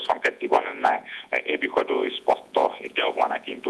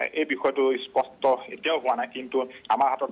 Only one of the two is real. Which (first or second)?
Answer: second